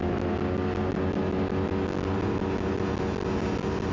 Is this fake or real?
real